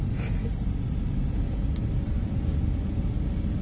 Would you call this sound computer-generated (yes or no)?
no